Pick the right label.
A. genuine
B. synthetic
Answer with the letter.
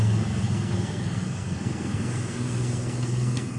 B